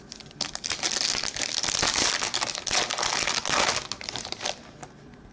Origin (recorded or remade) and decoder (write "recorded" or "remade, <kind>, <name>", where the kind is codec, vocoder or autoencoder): recorded